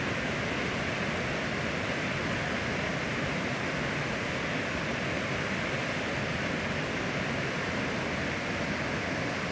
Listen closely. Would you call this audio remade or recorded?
recorded